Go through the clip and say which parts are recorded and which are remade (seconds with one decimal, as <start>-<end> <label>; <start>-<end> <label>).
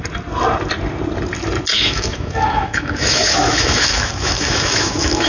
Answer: 0.0-1.7 recorded; 1.7-5.3 remade